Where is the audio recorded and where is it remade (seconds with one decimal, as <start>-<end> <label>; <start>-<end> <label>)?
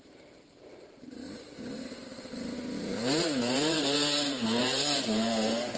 0.0-5.8 remade